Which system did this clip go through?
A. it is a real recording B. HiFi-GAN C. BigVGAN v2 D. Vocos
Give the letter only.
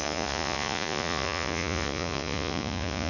D